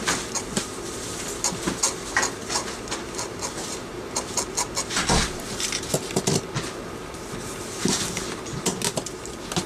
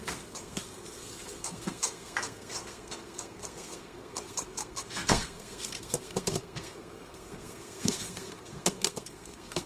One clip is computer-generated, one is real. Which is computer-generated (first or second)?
second